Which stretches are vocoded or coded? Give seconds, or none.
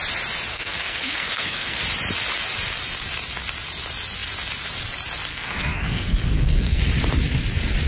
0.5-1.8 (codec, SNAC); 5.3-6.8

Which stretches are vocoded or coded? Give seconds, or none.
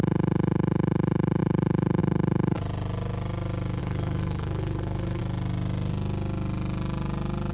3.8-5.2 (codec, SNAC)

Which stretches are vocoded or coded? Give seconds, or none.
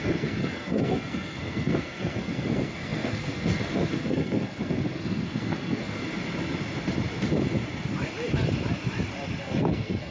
0.0-6.0 (codec, SNAC); 9.4-10.1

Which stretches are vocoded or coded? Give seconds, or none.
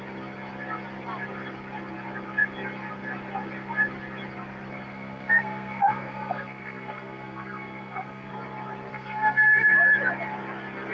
4.9-8.3 (codec, SNAC); 8.9-9.7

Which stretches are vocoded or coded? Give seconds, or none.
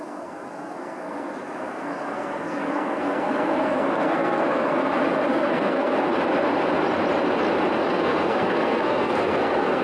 0.0-4.8 (codec, SNAC); 5.3-6.1; 7.9-9.8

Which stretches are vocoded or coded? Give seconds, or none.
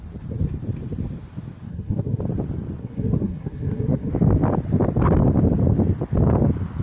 1.7-2.2 (codec, SNAC); 2.8-4.1